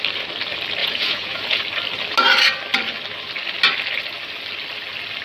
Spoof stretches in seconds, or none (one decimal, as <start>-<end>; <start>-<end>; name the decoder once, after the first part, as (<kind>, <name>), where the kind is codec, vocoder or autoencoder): 0.8-1.6 (vocoder, Vocos)